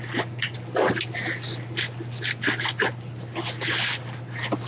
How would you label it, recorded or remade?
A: recorded